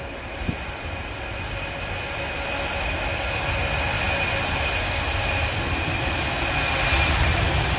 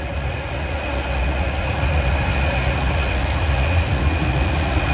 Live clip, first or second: first